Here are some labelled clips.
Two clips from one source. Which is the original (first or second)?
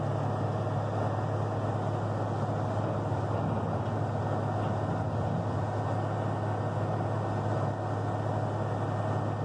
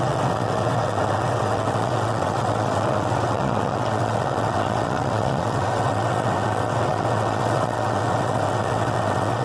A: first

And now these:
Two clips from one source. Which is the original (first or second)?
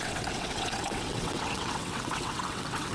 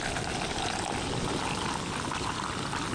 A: second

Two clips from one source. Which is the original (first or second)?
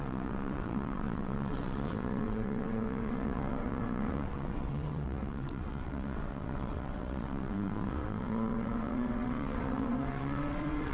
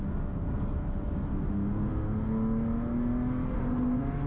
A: second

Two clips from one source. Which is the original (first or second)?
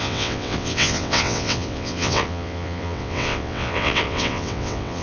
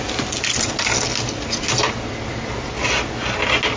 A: second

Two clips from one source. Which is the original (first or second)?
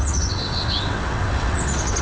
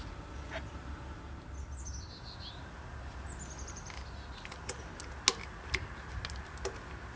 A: second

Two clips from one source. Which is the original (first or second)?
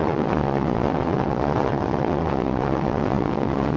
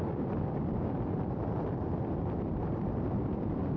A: second